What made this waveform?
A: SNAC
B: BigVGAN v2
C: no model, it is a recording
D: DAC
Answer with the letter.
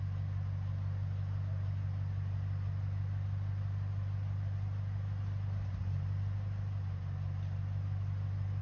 C